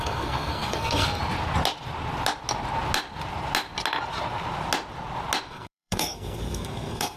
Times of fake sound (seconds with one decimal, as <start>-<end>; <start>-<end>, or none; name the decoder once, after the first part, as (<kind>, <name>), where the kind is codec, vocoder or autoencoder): 0.0-1.2 (codec, SNAC); 5.5-7.2